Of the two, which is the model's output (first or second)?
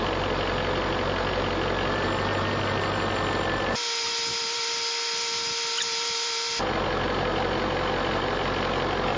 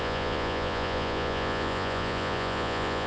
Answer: second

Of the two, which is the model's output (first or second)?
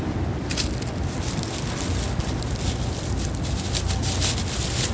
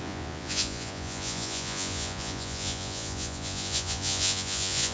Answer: second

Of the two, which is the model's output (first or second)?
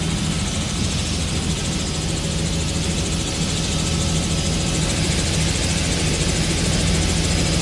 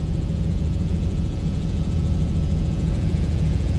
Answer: second